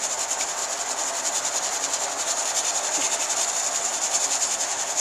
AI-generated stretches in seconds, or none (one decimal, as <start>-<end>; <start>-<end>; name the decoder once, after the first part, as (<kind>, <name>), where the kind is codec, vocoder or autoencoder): none

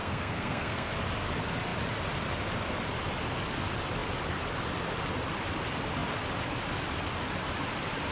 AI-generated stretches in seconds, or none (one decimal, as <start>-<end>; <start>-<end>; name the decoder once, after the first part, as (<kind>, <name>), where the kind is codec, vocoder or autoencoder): 0.0-0.9 (codec, SNAC)

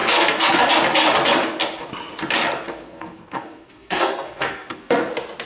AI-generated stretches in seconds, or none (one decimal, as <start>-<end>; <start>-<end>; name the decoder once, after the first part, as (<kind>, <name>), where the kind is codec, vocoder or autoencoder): 0.0-0.7 (codec, SNAC); 2.7-5.1

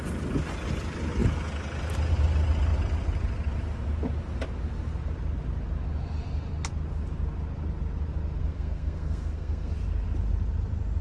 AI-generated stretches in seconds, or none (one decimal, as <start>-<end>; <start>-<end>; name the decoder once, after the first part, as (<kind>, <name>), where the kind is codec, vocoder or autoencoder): 8.4-9.7 (codec, SNAC)

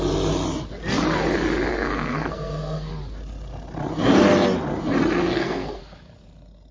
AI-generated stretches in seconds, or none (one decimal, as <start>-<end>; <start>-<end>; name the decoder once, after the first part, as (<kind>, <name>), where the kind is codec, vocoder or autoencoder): 1.7-2.9 (codec, SNAC); 5.2-5.8